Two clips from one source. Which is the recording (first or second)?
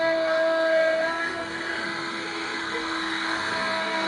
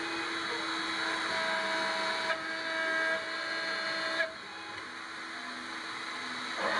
second